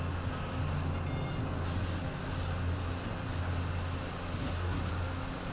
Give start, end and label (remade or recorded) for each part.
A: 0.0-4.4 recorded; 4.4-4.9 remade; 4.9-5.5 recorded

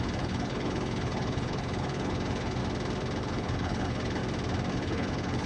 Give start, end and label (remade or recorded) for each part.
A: 0.0-2.6 remade; 2.6-3.2 recorded; 3.2-4.2 remade; 4.2-4.7 recorded; 4.7-5.5 remade

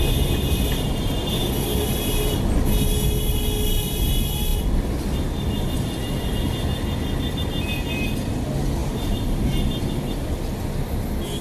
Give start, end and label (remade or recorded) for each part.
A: 0.0-8.8 recorded; 8.8-10.2 remade; 10.2-11.4 recorded

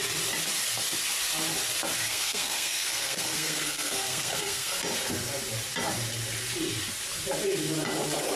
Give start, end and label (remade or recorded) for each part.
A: 0.0-2.0 recorded; 2.0-4.8 remade; 4.8-8.4 recorded

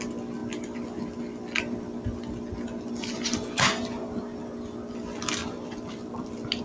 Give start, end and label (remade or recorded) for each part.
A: 0.0-5.4 recorded; 5.4-6.6 remade

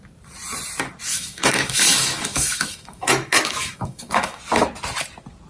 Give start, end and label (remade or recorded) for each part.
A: 0.0-1.1 recorded; 1.1-4.4 remade; 4.4-5.5 recorded

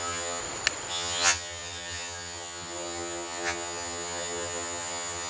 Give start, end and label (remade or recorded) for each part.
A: 0.0-0.4 remade; 0.4-0.9 recorded; 0.9-5.3 remade

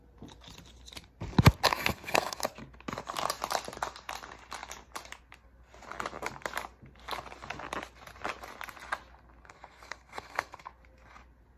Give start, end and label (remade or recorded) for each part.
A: 0.0-1.7 recorded; 1.7-2.4 remade; 2.4-9.4 recorded; 9.4-10.7 remade; 10.7-11.6 recorded